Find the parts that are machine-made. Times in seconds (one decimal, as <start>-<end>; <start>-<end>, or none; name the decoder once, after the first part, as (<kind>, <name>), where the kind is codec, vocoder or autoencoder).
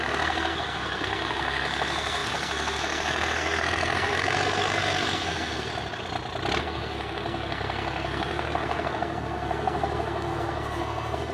0.0-5.7 (codec, SNAC); 6.6-11.3